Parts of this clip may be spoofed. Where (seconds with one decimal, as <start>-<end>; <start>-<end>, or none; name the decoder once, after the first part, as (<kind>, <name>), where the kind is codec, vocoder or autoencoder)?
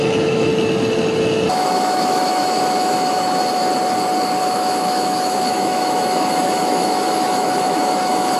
0.0-0.5 (autoencoder, DAC-VAE); 1.5-3.6; 4.4-8.4